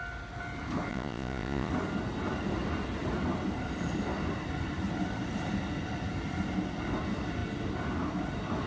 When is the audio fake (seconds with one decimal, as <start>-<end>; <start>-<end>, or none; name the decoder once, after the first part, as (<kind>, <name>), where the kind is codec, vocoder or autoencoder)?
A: 0.9-1.7 (vocoder, Vocos)